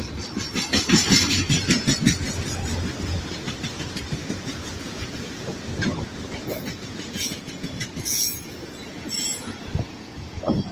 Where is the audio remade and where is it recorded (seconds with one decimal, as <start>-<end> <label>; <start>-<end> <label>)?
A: 0.0-4.2 recorded; 4.2-5.6 remade; 5.6-6.4 recorded; 6.4-10.7 remade